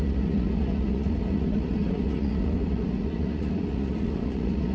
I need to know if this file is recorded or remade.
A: remade